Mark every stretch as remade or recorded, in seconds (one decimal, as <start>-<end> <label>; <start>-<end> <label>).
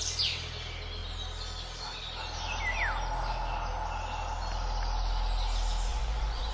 0.0-5.9 recorded; 5.9-6.5 remade